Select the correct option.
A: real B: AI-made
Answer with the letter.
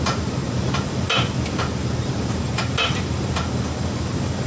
A